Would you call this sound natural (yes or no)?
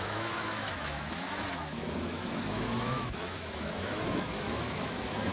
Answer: no